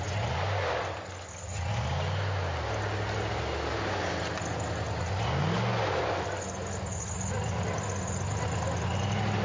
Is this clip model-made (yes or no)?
no